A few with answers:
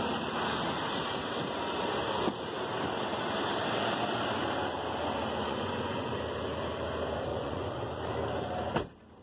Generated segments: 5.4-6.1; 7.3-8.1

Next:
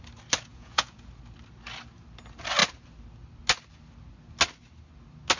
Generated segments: 0.5-1.1

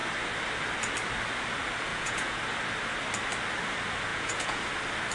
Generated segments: 1.9-2.4; 4.1-4.6

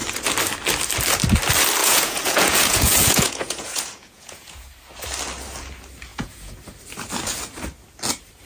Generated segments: 1.8-4.7; 6.1-6.6

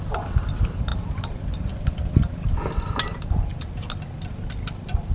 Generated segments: none